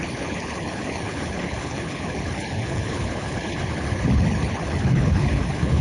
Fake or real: fake